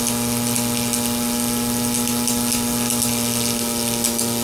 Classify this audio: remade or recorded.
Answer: recorded